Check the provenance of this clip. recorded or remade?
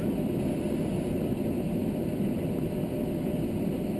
recorded